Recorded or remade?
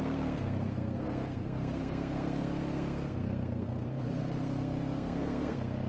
remade